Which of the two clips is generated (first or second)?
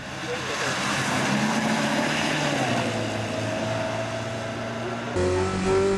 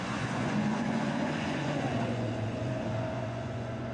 second